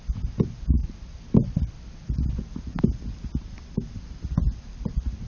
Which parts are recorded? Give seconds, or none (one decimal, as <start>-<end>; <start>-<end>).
0.0-5.3

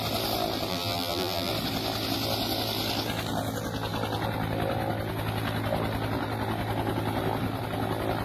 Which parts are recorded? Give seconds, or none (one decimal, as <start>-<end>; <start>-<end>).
0.0-0.7; 1.5-8.2

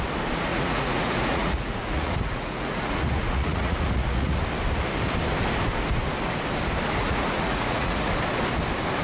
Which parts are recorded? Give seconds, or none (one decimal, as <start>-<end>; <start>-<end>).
0.0-0.5; 4.4-7.0; 8.1-9.0

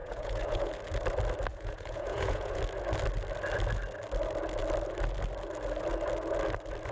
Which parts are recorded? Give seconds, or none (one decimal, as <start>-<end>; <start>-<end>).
0.7-1.5; 2.6-6.9

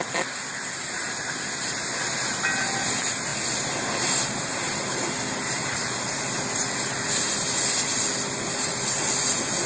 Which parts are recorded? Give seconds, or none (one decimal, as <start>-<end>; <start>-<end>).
0.0-9.7